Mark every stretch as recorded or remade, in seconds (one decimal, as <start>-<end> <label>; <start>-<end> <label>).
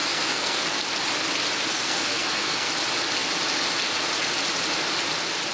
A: 0.0-0.8 remade; 0.8-1.7 recorded; 1.7-2.7 remade; 2.7-5.5 recorded